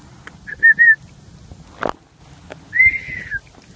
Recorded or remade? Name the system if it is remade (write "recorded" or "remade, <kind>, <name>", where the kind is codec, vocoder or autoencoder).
recorded